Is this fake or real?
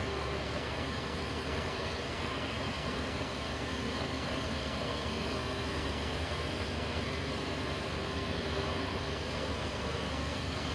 fake